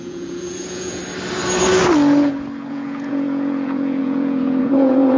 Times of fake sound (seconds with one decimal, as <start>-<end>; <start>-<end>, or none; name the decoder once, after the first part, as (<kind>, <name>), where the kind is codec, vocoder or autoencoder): 0.0-1.0 (vocoder, Vocos); 2.7-5.2